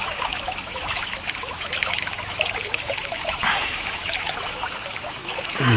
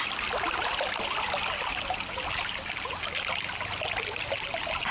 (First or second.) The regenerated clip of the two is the first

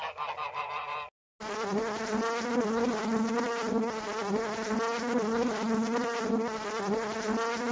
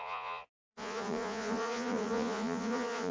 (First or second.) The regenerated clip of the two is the second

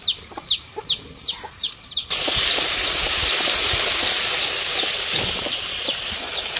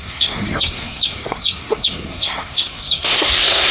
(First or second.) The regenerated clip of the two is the second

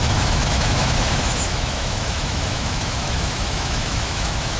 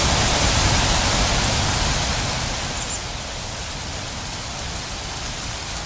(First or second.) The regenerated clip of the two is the first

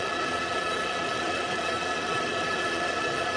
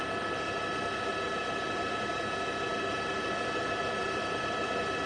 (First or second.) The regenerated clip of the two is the first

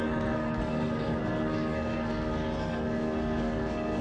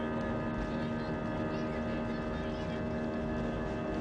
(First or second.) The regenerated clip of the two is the first